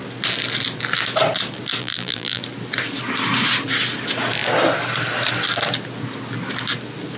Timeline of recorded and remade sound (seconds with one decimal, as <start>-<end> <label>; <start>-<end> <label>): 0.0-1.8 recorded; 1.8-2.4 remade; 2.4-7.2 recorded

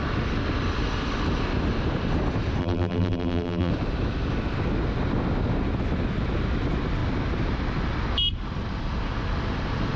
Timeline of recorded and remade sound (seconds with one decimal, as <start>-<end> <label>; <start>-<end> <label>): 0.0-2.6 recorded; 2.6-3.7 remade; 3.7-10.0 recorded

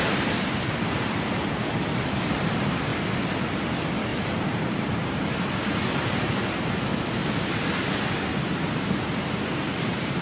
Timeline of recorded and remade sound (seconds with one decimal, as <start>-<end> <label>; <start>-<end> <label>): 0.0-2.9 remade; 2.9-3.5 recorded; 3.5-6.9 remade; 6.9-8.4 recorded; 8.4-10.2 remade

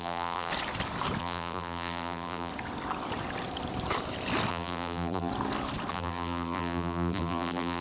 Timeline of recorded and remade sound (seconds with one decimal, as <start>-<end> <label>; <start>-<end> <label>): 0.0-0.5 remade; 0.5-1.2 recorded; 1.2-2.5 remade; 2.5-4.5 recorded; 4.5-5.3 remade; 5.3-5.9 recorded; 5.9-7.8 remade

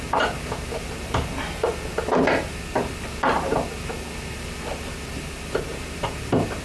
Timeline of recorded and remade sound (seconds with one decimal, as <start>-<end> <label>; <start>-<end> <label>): 0.0-1.7 remade; 1.7-5.7 recorded; 5.7-6.6 remade

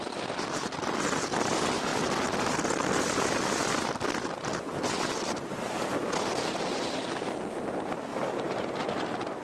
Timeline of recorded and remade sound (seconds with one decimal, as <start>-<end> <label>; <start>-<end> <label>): 0.0-8.1 recorded; 8.1-8.7 remade; 8.7-9.4 recorded

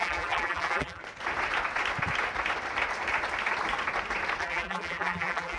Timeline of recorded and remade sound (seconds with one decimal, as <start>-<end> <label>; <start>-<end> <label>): 0.0-1.0 remade; 1.0-4.4 recorded; 4.4-5.6 remade

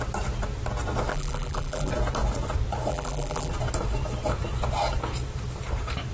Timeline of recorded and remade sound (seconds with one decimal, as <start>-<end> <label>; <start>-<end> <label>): 0.0-1.1 recorded; 1.1-1.9 remade; 1.9-2.9 recorded; 2.9-3.5 remade; 3.5-6.1 recorded